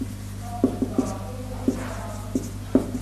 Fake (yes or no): no